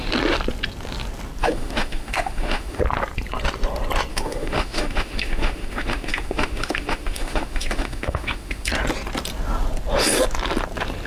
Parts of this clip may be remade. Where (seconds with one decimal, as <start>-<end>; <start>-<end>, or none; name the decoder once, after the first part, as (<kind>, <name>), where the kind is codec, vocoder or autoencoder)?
1.4-2.8 (autoencoder, DAC-VAE); 4.1-8.7